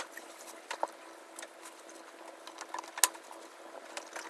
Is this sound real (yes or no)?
yes